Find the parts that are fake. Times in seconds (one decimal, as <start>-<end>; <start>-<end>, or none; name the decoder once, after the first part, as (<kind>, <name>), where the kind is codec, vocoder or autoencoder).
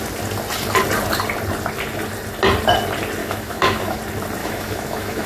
3.2-4.0 (autoencoder, DAC-VAE); 4.4-5.3